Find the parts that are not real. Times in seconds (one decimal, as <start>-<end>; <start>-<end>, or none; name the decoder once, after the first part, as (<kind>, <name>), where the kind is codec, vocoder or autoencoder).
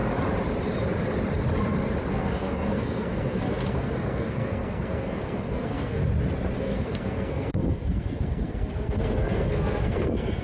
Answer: 2.1-6.0 (codec, SNAC); 6.6-10.4